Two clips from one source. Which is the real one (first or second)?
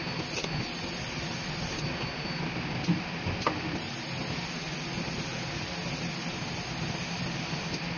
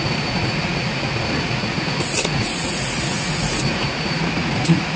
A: first